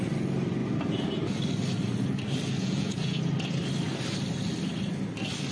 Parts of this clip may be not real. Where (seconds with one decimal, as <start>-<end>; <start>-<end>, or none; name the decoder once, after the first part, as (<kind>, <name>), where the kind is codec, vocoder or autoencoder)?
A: 2.6-3.2 (vocoder, Vocos)